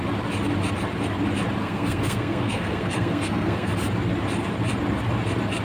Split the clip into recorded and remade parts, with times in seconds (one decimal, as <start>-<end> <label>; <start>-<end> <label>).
0.0-1.6 recorded; 1.6-3.7 remade; 3.7-5.6 recorded